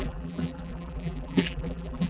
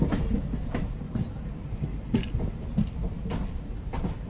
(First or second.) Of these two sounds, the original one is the second